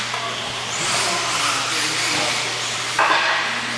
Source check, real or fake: real